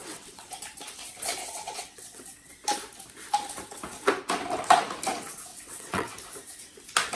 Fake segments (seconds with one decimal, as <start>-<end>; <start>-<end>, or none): 0.0-0.5; 1.4-2.5; 5.5-6.1